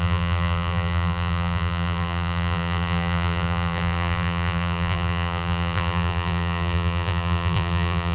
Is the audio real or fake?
fake